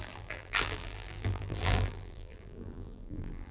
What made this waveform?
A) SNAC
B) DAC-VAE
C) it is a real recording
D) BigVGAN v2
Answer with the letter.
D